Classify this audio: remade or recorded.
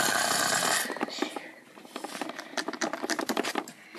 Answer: remade